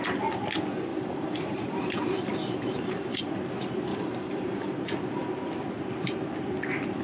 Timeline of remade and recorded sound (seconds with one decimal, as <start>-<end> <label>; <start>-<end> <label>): 0.0-0.9 recorded; 0.9-3.2 remade; 3.2-3.9 recorded; 3.9-4.7 remade; 4.7-7.0 recorded